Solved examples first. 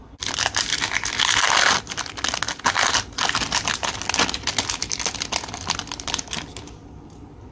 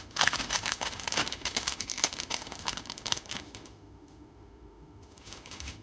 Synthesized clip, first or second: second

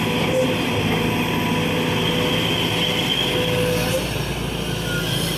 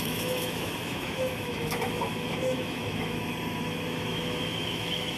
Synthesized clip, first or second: second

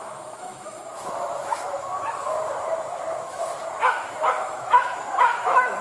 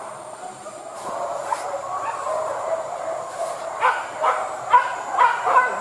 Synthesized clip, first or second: first